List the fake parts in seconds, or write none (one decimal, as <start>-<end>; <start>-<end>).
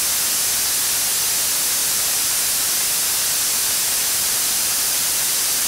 1.8-2.8; 4.0-5.7